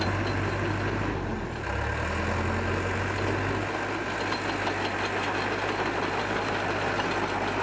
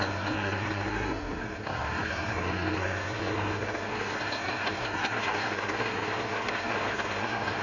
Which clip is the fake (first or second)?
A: second